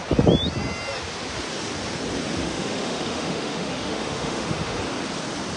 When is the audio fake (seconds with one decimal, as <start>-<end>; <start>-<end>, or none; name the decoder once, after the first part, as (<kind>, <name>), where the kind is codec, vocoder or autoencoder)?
2.4-4.8 (autoencoder, DAC-VAE)